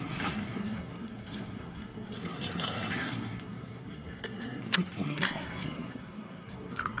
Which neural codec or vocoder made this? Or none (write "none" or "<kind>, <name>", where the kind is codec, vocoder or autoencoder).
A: codec, SNAC